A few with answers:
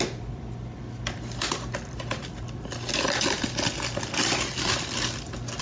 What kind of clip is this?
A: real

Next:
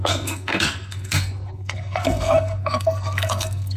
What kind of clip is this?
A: fake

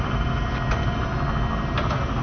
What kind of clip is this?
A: real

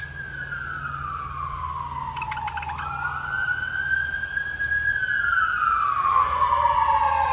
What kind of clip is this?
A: real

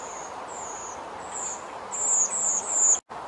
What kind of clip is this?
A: real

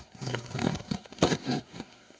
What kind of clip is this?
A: fake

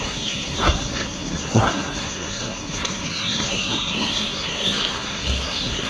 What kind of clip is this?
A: fake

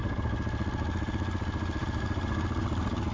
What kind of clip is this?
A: real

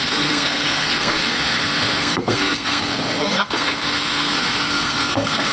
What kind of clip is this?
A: fake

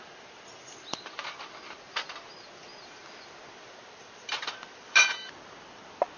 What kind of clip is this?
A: real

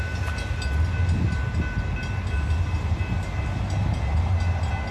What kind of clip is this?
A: real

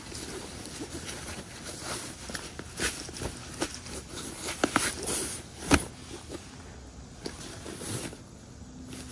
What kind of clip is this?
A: real